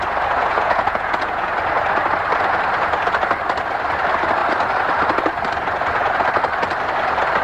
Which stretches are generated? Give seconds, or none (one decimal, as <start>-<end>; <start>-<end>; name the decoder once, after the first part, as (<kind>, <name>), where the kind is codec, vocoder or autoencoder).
0.4-1.5 (vocoder, Vocos)

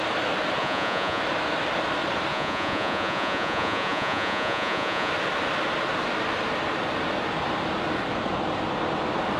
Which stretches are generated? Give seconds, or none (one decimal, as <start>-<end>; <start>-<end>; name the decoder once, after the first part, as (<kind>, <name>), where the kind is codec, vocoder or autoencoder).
0.6-1.2 (vocoder, Vocos); 2.3-5.1

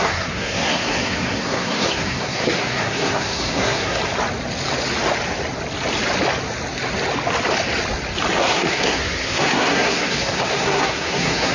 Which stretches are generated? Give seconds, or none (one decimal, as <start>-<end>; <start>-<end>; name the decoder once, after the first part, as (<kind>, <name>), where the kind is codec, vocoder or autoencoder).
0.0-4.0 (codec, SNAC); 8.4-11.5

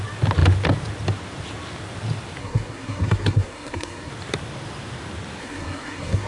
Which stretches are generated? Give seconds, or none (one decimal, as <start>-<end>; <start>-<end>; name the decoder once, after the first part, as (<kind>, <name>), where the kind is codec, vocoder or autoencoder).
2.4-4.1 (codec, SNAC); 5.4-6.3

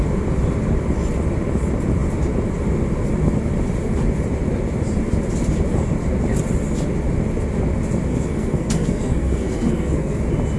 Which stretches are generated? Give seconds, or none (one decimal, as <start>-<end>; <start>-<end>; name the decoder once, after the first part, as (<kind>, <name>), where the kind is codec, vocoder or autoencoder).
8.1-10.2 (codec, SNAC)